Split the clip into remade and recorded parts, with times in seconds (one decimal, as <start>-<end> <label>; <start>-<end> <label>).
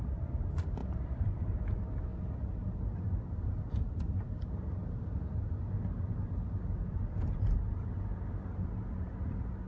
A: 0.0-2.1 remade; 2.1-3.9 recorded; 3.9-9.7 remade